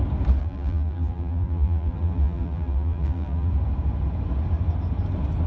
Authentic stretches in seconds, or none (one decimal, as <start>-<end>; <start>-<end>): 0.0-0.4; 3.5-5.5